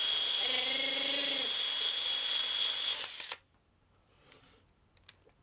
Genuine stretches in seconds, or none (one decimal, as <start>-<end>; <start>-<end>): 0.0-5.4